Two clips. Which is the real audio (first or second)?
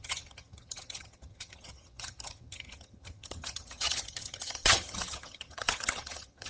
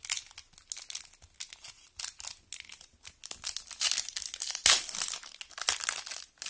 second